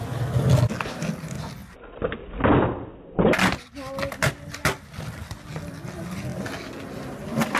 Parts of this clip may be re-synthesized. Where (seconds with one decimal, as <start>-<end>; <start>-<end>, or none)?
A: none